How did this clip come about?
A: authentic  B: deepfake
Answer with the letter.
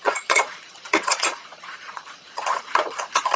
B